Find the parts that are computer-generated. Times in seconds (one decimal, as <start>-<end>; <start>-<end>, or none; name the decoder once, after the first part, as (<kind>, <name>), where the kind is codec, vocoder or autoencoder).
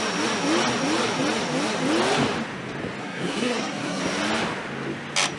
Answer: 3.0-4.0 (codec, SNAC)